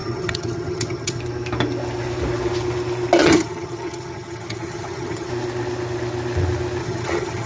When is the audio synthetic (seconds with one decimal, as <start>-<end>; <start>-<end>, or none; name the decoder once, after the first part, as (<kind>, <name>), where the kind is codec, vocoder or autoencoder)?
0.0-1.2 (vocoder, HiFi-GAN); 3.2-5.3; 6.8-7.5